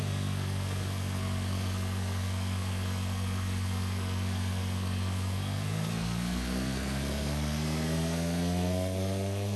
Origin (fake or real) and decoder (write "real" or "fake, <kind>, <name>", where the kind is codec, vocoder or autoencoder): fake, codec, SNAC